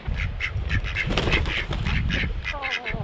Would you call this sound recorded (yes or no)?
yes